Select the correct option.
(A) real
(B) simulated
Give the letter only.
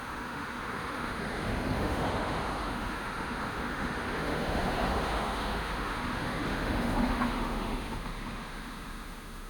B